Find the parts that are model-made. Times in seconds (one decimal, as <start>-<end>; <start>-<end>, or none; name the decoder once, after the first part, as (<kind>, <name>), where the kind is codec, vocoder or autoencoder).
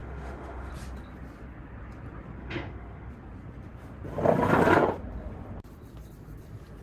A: 0.0-0.7 (autoencoder, DAC-VAE); 2.4-3.1